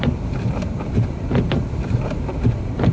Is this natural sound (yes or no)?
no